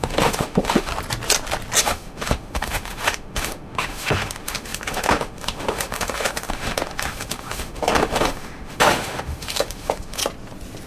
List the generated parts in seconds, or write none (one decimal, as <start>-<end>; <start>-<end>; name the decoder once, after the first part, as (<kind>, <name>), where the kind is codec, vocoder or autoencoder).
0.0-0.9 (autoencoder, DAC-VAE); 1.8-10.2